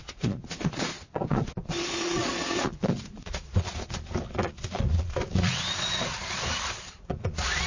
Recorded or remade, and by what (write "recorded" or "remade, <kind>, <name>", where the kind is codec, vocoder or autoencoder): remade, vocoder, Vocos